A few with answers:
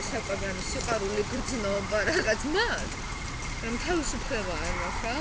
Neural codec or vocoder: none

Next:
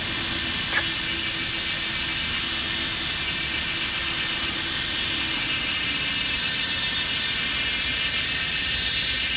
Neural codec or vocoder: none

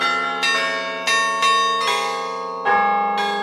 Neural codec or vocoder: none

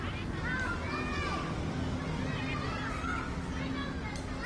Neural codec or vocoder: none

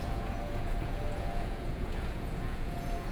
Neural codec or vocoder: vocoder, Vocos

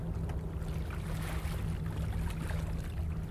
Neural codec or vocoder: none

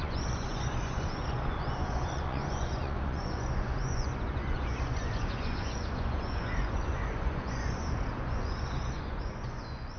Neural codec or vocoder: vocoder, Vocos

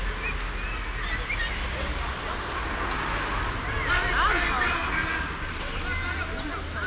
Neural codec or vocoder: none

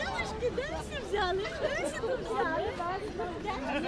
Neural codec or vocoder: none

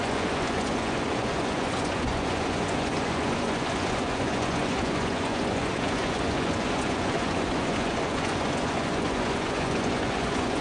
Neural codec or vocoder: vocoder, Vocos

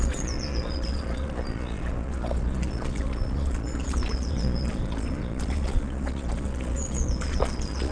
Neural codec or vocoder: vocoder, Vocos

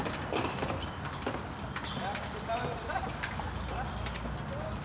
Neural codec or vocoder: none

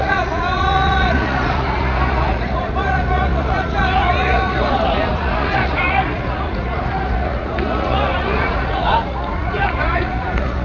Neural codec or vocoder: vocoder, Vocos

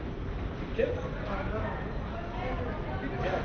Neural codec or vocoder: none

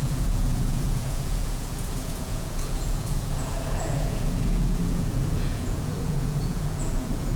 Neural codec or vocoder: vocoder, Vocos